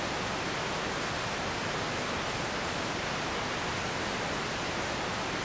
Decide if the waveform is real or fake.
real